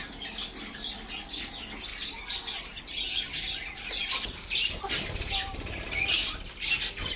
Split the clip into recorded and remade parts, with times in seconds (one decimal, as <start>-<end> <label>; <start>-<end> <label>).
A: 0.0-7.2 recorded